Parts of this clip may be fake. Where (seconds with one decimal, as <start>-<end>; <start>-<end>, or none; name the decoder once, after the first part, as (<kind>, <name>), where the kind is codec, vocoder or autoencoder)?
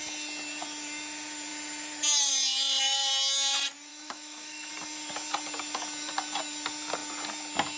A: 3.9-4.7 (autoencoder, DAC-VAE)